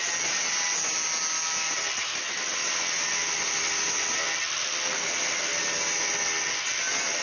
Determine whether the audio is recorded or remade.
recorded